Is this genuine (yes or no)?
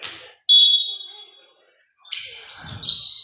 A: yes